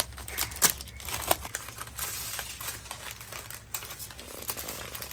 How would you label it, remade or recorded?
recorded